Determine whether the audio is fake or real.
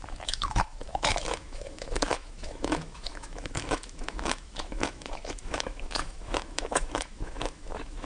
fake